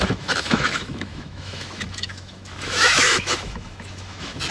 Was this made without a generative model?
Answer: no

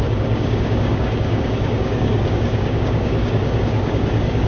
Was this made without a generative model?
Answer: no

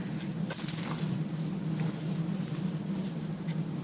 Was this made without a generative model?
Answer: yes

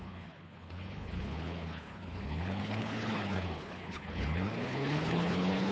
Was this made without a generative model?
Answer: no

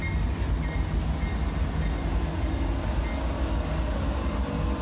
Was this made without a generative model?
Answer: yes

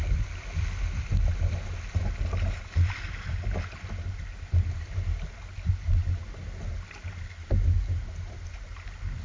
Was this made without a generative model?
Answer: yes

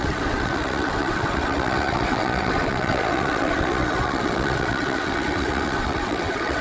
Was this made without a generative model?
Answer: no